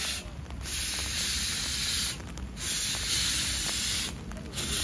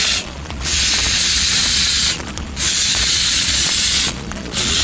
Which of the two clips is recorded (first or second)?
first